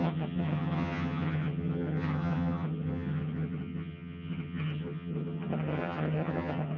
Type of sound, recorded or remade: remade